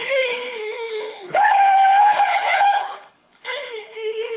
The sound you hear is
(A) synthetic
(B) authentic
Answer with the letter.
A